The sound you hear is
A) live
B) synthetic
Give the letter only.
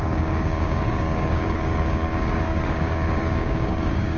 B